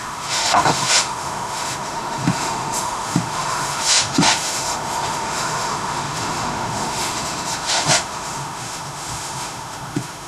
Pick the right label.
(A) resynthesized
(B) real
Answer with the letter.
A